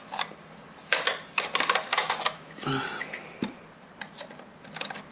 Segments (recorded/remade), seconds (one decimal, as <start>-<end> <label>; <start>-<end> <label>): 0.0-1.9 recorded; 1.9-2.7 remade; 2.7-5.1 recorded